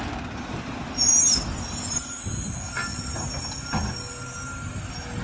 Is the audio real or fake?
real